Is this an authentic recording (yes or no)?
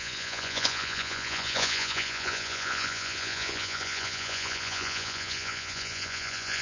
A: no